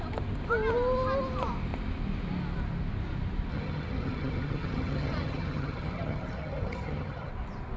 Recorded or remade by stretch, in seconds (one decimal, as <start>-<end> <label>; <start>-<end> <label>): 0.0-3.5 recorded; 3.5-7.3 remade; 7.3-7.8 recorded